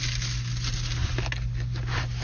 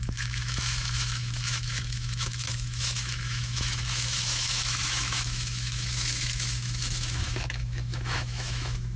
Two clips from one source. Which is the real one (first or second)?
first